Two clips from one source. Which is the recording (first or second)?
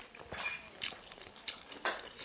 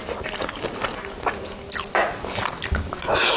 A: second